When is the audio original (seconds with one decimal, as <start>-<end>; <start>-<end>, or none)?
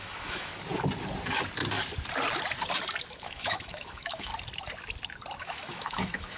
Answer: 0.5-3.1; 4.3-5.4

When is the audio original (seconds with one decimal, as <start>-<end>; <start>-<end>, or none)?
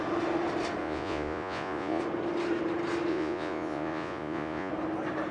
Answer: 0.0-0.8; 2.0-3.1; 4.7-5.3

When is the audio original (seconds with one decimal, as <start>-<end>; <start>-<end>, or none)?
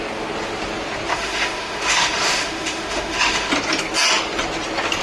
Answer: 0.0-1.1; 3.5-5.0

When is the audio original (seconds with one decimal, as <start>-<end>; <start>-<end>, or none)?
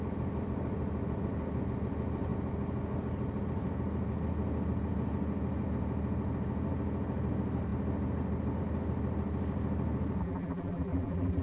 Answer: 0.0-10.2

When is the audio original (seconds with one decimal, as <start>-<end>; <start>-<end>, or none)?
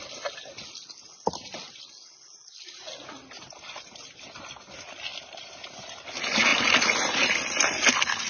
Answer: 0.0-5.1; 5.9-6.5